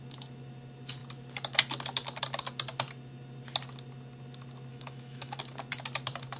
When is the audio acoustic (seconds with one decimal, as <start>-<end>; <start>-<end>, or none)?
0.0-4.7; 5.4-6.4